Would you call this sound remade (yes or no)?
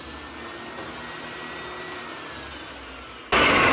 no